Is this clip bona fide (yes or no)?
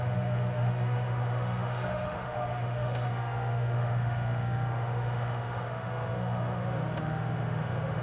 no